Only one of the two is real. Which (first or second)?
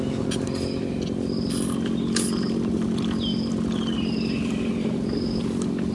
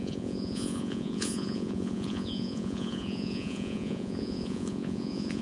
first